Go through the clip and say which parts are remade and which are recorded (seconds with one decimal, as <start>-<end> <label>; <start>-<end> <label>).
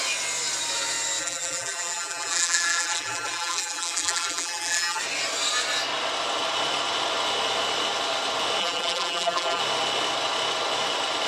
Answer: 0.0-1.2 recorded; 1.2-5.0 remade; 5.0-8.6 recorded; 8.6-9.6 remade; 9.6-11.3 recorded